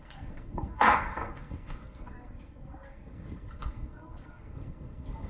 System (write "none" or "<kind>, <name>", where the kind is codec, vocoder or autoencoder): codec, SNAC